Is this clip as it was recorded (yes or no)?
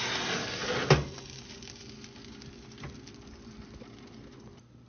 yes